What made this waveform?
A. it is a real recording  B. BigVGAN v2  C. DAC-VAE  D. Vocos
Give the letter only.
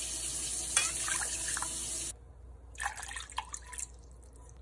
A